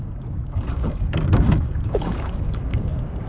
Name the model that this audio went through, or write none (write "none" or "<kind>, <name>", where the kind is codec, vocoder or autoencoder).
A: codec, DAC